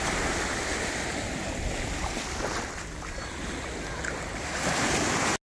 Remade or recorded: recorded